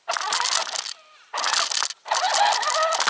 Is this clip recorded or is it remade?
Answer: recorded